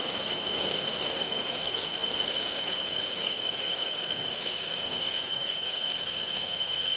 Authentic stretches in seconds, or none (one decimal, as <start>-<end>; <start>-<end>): none

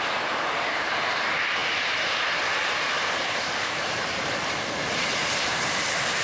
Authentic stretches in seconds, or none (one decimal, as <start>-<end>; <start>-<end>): none

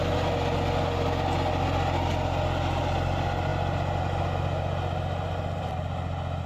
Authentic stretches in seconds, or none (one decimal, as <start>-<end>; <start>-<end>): 0.0-6.5

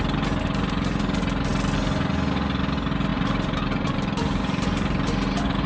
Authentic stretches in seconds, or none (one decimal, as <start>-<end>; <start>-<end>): 0.0-3.1

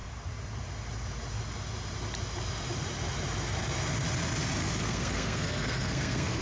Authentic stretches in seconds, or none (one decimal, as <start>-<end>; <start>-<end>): 0.0-4.6

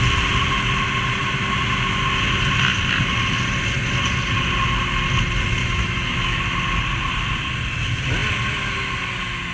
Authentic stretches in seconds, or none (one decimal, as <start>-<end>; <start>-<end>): 0.0-5.6; 6.4-9.5